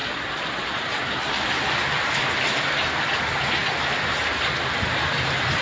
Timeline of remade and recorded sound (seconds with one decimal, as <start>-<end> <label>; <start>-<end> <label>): 0.0-5.6 recorded